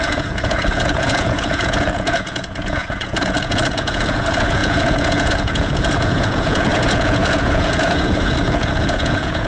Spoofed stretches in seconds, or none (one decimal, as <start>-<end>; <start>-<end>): 0.0-9.5